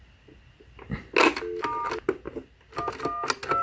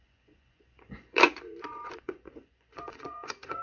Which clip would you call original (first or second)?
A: first